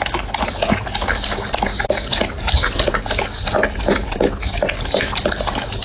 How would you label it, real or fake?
real